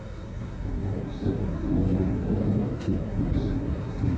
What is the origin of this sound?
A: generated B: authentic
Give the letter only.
A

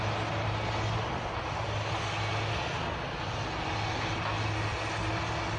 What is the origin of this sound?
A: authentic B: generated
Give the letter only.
A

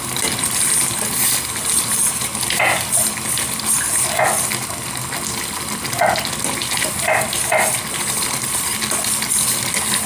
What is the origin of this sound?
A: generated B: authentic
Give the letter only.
B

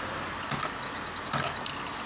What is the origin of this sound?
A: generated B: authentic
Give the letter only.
B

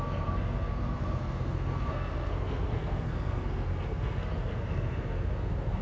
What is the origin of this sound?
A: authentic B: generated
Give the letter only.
B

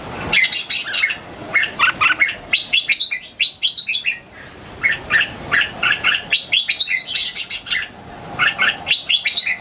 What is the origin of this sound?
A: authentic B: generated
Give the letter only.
A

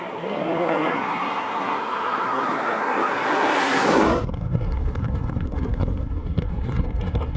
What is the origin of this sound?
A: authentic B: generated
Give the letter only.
B